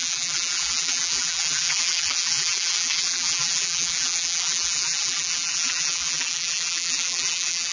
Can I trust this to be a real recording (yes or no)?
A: no